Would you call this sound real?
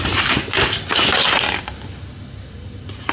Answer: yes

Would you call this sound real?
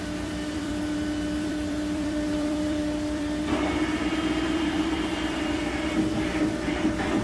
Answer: no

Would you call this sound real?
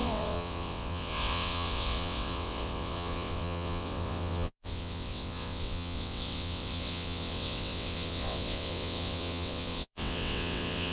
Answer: no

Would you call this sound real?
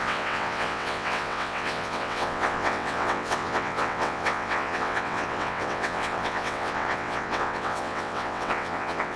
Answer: no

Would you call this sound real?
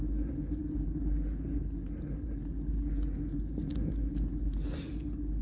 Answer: yes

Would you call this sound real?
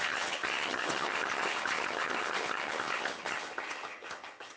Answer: no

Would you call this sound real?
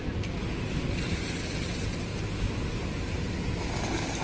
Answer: yes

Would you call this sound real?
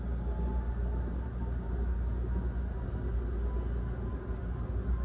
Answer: yes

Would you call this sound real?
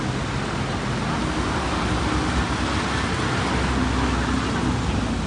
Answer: yes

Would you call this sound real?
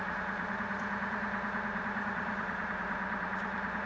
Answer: no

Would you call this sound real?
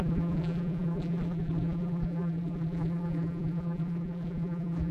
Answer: no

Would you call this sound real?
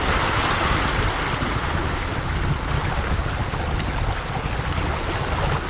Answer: yes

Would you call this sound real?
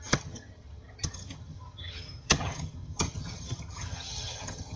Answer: no